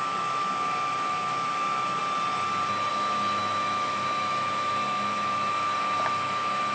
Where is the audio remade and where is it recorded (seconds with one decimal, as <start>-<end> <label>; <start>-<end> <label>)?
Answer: 0.0-2.0 remade; 2.0-2.9 recorded; 2.9-6.7 remade